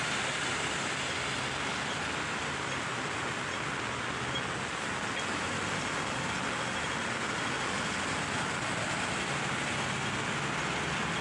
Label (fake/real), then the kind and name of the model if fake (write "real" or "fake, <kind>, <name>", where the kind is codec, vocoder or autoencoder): real